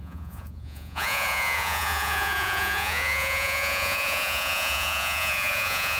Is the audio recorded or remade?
remade